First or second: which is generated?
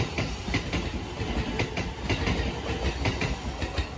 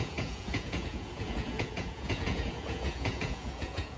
second